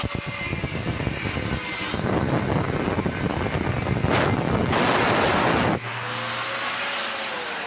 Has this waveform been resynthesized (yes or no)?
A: no